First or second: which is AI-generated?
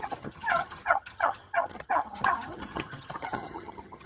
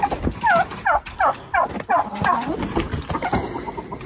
first